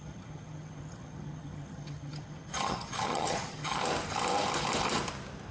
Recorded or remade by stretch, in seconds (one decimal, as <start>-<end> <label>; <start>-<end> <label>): 0.0-3.8 remade; 3.8-5.5 recorded